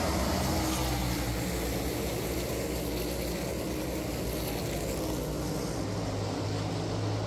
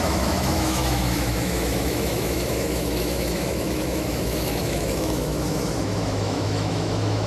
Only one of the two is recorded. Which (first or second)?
first